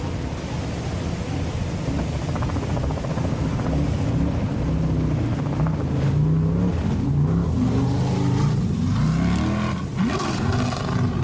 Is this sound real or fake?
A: real